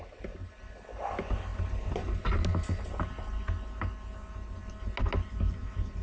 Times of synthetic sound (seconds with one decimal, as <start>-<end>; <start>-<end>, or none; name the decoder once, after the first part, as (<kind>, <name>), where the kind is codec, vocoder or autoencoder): none